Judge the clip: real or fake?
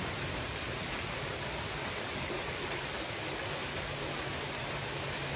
real